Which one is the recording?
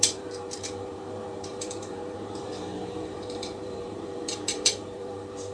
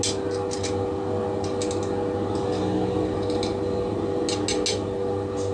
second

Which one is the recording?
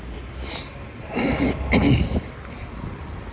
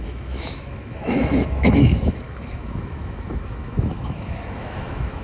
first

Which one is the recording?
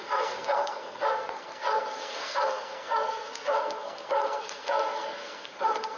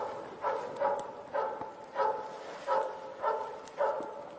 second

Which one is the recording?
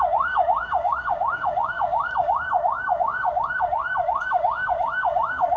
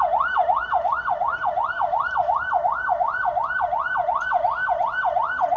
second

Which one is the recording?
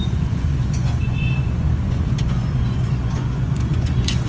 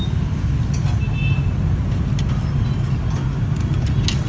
second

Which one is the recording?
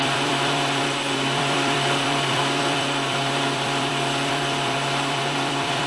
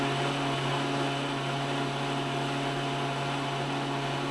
second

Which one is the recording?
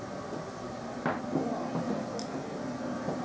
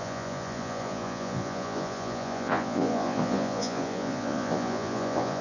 first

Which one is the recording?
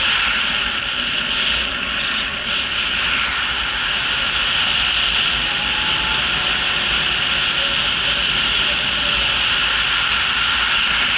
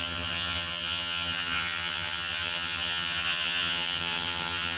first